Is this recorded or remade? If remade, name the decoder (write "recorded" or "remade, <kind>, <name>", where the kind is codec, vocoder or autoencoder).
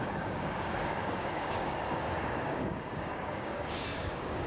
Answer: remade, codec, DAC